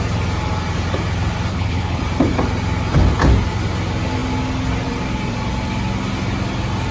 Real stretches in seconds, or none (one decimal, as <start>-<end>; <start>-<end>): 0.0-1.5; 2.0-6.9